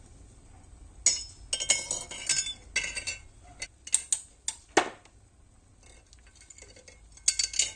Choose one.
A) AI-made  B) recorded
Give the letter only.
B